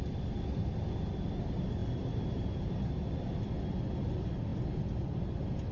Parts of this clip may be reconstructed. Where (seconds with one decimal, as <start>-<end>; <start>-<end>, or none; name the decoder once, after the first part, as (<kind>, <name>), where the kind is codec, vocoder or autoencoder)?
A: none